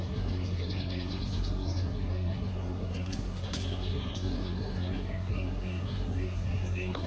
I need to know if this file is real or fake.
fake